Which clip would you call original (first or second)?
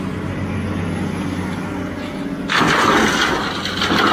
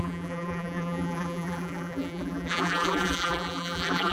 first